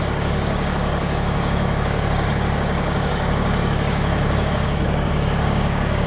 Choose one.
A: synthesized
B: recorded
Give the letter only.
A